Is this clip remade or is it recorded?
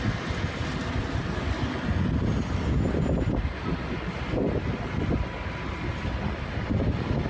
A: recorded